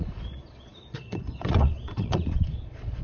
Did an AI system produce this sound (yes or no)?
yes